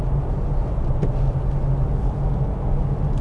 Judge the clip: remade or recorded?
recorded